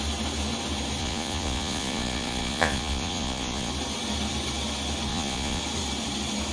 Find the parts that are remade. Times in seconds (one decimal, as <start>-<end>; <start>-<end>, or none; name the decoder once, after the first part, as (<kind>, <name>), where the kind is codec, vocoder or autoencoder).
1.0-3.7 (vocoder, Vocos); 5.1-5.6